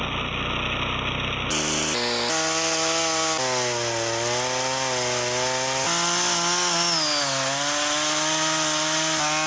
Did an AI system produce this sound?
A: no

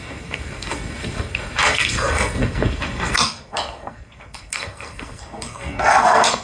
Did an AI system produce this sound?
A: yes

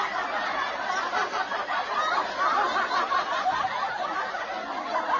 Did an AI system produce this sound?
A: no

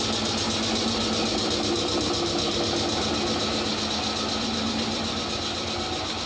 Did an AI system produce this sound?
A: no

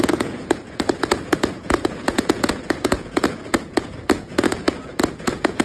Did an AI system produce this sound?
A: yes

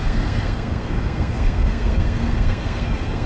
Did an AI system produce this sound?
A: yes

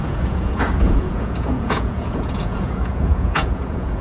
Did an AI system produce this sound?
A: yes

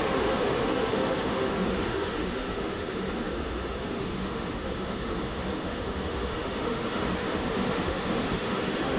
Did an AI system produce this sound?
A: yes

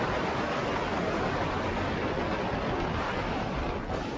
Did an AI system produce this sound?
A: no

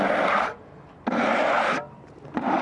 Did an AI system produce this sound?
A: no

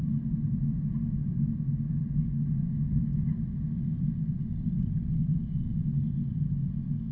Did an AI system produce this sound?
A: no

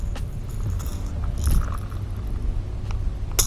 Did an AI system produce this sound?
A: no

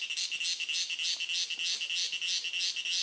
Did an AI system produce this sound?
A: no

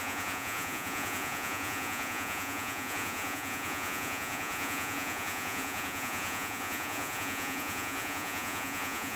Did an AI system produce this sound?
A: yes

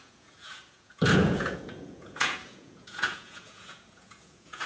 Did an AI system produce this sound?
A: yes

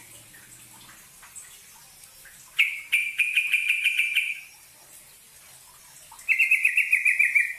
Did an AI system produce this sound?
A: no